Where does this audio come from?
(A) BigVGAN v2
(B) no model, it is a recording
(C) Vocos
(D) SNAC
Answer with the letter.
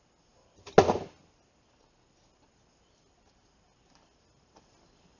B